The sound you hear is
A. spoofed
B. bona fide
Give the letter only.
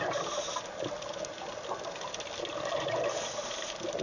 B